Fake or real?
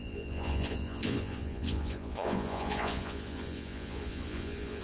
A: fake